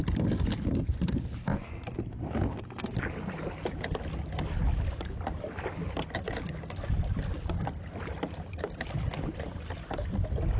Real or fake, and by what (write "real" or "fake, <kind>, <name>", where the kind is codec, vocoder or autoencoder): real